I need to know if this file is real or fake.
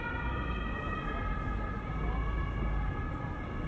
real